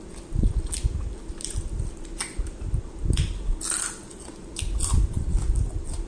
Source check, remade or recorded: recorded